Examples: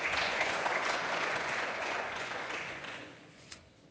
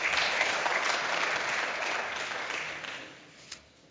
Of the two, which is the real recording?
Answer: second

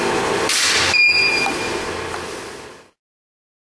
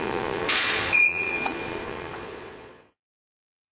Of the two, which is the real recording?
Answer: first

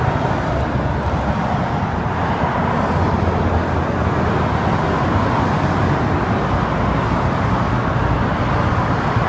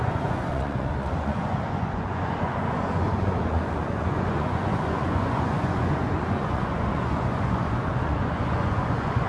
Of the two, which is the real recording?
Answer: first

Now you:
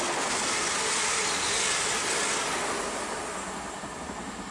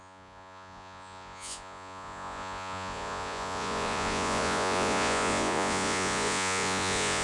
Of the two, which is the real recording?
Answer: first